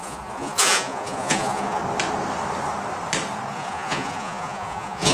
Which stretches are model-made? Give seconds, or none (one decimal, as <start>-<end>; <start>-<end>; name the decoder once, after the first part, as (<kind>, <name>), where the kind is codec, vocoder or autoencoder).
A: 0.0-1.8 (vocoder, Vocos); 3.5-5.1